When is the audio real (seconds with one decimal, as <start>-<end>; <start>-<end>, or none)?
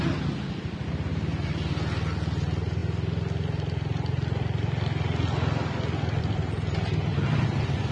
0.0-7.9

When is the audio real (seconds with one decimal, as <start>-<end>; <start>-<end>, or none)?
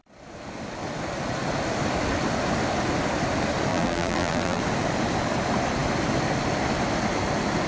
0.0-3.7; 4.6-7.7